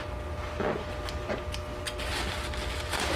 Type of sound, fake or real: real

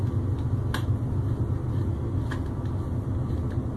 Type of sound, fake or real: real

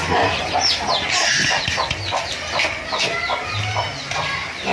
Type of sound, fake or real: real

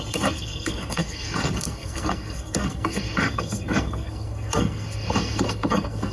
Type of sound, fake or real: fake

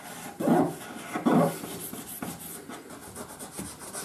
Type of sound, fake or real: real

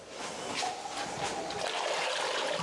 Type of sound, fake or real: real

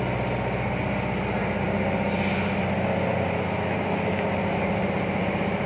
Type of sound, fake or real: real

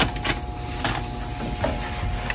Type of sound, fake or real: real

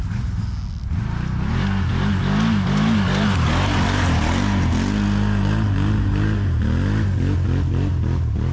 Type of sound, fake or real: real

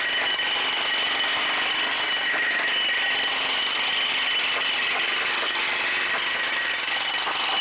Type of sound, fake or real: real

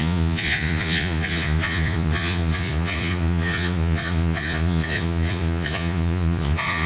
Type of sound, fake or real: fake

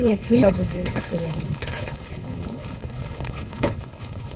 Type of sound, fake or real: fake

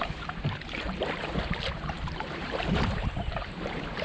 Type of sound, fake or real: fake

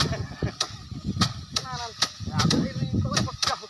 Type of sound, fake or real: real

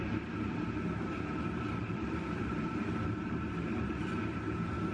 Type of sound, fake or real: fake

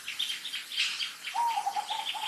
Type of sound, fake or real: real